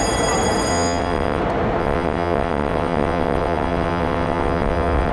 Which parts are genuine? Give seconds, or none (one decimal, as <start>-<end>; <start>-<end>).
0.0-0.7; 1.4-1.8

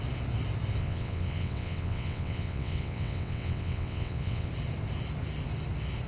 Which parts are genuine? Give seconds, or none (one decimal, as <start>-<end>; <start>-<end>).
0.0-0.8; 4.5-6.1

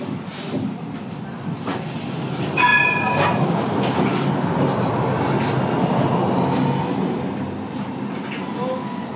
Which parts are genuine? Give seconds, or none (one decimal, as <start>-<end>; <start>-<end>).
0.0-9.2

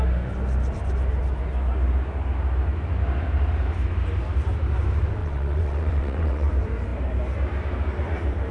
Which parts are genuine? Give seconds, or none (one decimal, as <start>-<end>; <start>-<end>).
0.0-5.2; 6.5-8.5